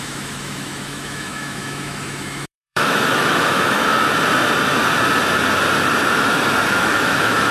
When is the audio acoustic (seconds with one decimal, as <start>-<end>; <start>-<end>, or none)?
3.8-6.7